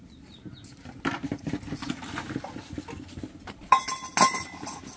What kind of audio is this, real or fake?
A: real